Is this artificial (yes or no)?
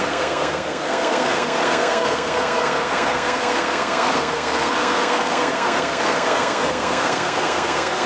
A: yes